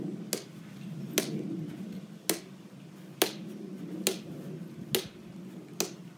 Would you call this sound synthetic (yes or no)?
no